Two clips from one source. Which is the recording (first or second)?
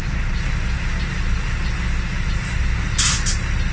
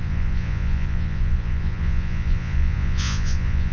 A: first